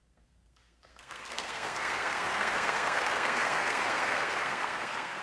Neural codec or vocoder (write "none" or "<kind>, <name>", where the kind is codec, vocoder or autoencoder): codec, SNAC